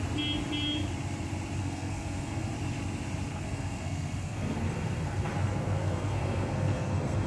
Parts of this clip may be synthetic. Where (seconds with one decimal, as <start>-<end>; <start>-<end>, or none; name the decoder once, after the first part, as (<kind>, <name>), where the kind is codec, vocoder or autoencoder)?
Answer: 1.6-2.5 (codec, SNAC); 3.3-7.3